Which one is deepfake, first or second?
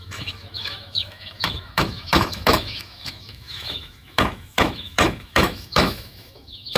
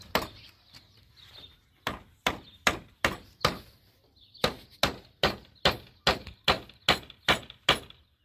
first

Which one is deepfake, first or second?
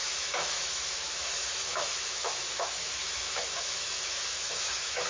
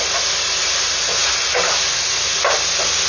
first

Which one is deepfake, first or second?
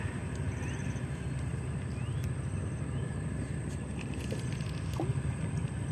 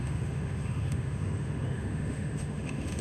second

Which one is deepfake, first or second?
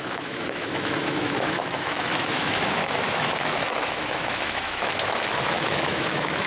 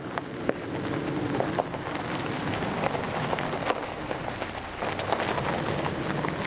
first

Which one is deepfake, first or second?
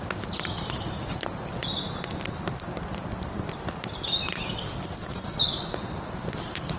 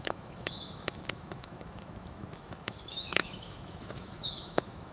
second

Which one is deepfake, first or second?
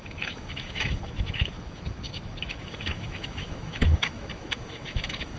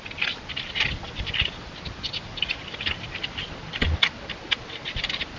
first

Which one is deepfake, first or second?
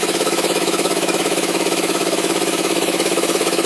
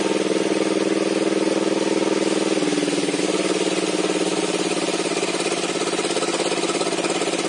first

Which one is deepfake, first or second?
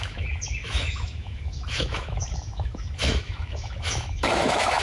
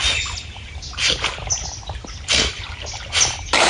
first